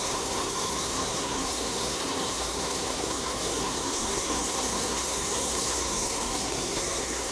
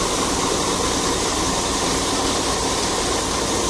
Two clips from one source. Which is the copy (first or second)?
first